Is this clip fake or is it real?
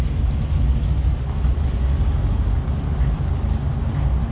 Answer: real